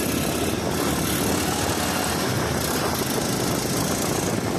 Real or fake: real